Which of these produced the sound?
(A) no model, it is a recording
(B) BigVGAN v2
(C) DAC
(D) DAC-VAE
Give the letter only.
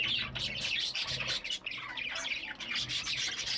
B